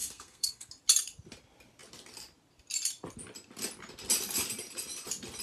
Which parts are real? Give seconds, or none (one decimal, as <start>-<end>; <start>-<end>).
0.7-5.4